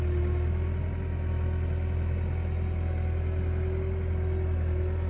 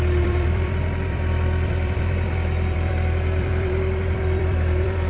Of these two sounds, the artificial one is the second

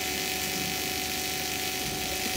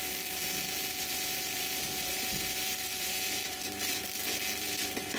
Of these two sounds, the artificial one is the second